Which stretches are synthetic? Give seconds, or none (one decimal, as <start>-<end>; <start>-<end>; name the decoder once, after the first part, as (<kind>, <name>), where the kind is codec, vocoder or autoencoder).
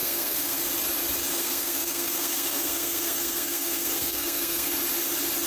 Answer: 0.0-0.6 (codec, SNAC); 1.4-4.7